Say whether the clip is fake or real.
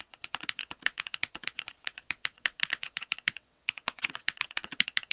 fake